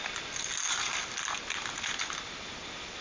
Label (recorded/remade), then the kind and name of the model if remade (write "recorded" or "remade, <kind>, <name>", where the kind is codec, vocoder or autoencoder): recorded